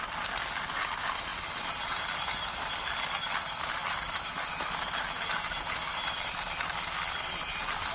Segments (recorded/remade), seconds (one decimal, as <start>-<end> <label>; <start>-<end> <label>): 0.0-7.9 recorded